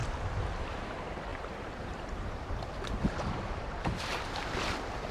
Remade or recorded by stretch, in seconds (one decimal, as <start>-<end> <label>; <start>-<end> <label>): 0.0-0.8 remade; 0.8-1.3 recorded; 1.3-4.4 remade; 4.4-5.1 recorded